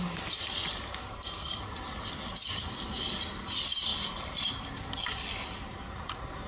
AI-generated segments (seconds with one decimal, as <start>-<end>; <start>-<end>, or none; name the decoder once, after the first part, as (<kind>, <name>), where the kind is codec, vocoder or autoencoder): 1.1-1.6 (codec, SNAC)